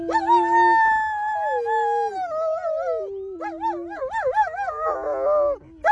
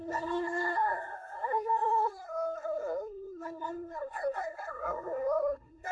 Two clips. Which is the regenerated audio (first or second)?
second